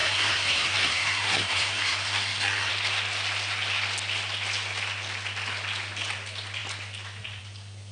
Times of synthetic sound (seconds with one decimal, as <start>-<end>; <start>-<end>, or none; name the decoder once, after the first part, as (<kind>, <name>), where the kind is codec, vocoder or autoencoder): 0.0-2.7 (codec, SNAC)